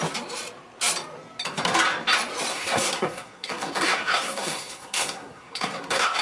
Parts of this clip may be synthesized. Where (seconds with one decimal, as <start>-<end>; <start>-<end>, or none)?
2.5-6.2